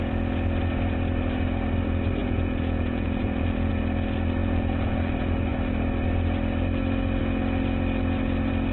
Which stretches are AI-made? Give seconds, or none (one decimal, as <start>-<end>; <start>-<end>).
2.2-3.7; 4.4-5.1